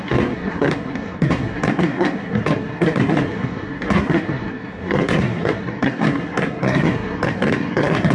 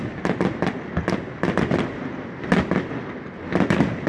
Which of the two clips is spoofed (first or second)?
first